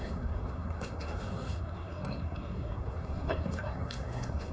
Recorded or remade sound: remade